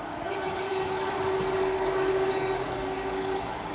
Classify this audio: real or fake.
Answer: fake